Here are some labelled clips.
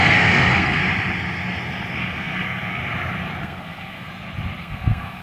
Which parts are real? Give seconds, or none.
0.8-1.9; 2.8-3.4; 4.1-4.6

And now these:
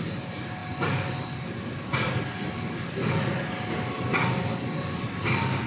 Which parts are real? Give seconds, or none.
0.0-5.7

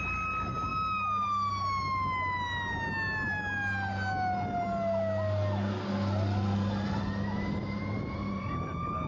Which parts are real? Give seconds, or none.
0.0-9.1

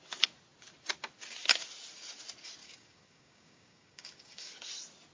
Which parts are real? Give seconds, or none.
0.0-2.6; 4.5-5.1

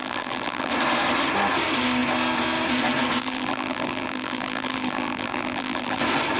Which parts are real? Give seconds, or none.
0.7-3.2; 6.0-6.4